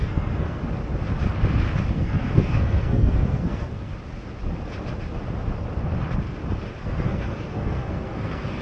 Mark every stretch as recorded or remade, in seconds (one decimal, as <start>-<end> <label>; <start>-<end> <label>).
0.0-0.6 remade; 0.6-1.9 recorded; 1.9-3.9 remade; 3.9-6.8 recorded; 6.8-8.6 remade